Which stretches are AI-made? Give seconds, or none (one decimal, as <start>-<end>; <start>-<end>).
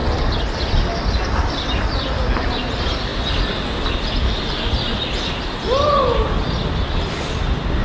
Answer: none